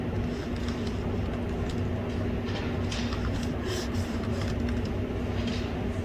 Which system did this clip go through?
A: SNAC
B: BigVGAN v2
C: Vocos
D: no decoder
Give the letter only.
D